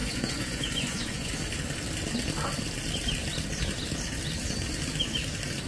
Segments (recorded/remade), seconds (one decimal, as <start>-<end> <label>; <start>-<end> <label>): 0.0-1.3 remade; 1.3-5.7 recorded